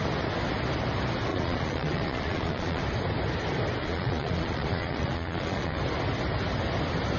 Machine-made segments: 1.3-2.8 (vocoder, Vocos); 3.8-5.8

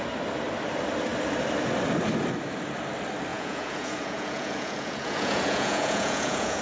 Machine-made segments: 3.3-6.6 (vocoder, Vocos)